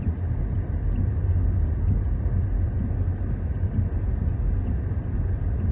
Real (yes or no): yes